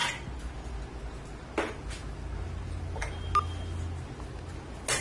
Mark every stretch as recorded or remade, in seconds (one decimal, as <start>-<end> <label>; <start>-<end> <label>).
0.0-5.0 recorded